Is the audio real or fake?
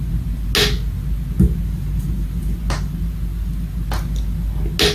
real